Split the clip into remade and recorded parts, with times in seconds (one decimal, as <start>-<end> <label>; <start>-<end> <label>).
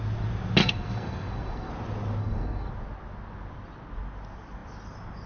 0.0-0.6 recorded; 0.6-1.7 remade; 1.7-2.2 recorded; 2.2-2.7 remade; 2.7-5.3 recorded